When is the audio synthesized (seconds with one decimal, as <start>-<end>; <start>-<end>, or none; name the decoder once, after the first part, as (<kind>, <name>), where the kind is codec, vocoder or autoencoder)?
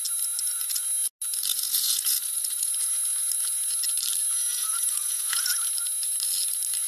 1.5-2.7 (vocoder, Vocos); 4.5-5.5